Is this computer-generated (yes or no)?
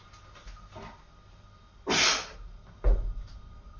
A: no